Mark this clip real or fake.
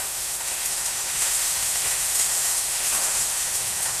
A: fake